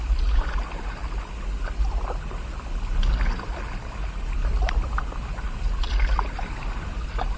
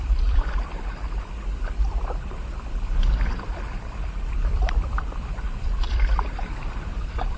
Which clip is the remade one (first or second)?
second